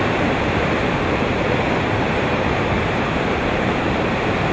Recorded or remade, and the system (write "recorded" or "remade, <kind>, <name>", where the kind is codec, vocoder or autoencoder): remade, vocoder, BigVGAN v2